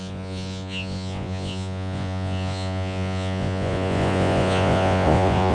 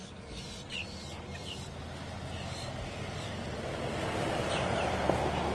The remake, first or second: first